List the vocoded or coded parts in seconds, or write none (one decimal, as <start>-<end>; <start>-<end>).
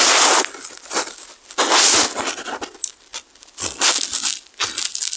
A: none